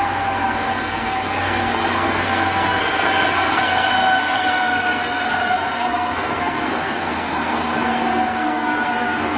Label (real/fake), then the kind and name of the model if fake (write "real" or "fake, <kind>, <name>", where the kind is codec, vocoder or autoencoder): fake, codec, SNAC